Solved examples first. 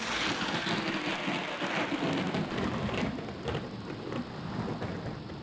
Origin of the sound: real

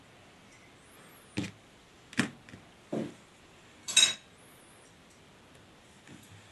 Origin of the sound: real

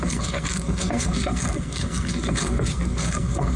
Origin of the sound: fake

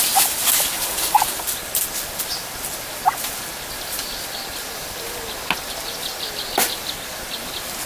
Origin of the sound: real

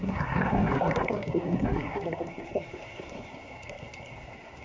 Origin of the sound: fake